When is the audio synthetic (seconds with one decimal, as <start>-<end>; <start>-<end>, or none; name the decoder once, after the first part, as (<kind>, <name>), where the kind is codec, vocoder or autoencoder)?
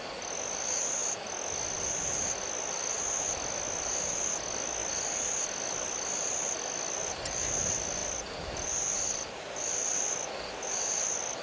none